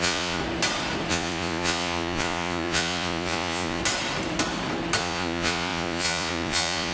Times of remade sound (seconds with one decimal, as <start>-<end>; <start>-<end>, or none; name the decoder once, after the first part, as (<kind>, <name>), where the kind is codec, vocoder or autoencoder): 0.0-0.4 (vocoder, Vocos); 1.1-3.8; 5.0-6.9